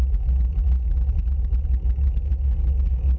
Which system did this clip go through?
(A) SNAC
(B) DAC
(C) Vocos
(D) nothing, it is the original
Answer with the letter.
D